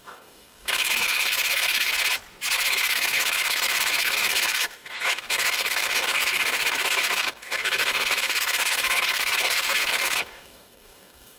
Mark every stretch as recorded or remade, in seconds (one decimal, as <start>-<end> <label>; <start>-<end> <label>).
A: 0.0-1.9 remade; 1.9-2.7 recorded; 2.7-11.4 remade